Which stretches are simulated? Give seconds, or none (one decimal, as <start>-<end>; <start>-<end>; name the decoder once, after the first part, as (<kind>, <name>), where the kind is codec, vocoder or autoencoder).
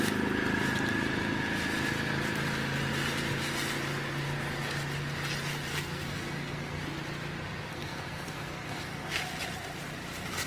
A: 5.7-6.8 (codec, SNAC); 7.7-9.2